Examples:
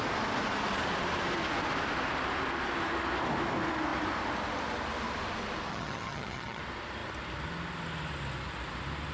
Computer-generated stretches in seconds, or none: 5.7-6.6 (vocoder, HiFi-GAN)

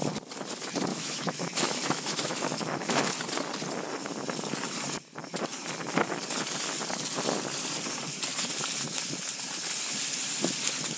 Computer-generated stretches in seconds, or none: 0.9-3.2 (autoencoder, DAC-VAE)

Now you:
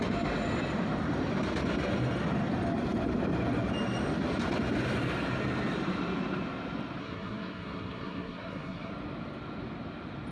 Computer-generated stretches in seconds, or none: 7.0-8.9 (codec, SNAC)